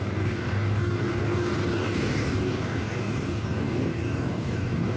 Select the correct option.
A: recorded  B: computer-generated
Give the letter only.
B